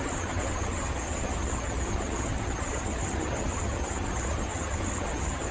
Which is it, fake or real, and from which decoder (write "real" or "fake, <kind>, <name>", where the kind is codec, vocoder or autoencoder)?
fake, vocoder, HiFi-GAN